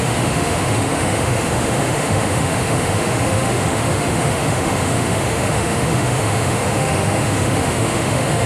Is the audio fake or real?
fake